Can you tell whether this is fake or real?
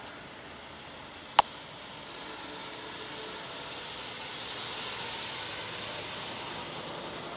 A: real